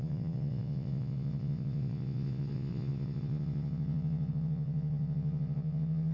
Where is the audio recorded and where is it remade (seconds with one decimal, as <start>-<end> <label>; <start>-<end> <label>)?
0.0-6.1 remade